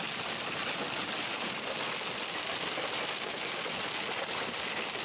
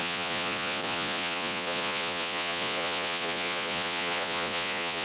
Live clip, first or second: first